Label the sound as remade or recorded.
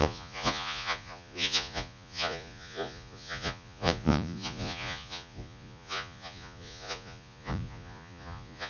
remade